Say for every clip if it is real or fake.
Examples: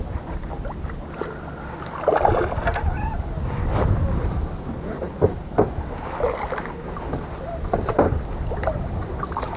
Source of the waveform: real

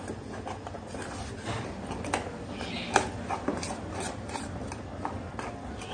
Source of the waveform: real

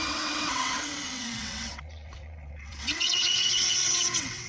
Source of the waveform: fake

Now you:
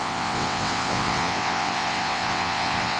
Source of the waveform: fake